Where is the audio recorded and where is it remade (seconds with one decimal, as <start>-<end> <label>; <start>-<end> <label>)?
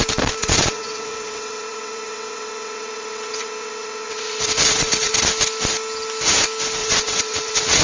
0.0-0.4 recorded; 0.4-5.1 remade; 5.1-6.8 recorded; 6.8-7.8 remade